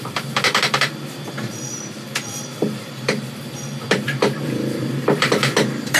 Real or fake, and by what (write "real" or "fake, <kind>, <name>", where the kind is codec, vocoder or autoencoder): fake, vocoder, BigVGAN v2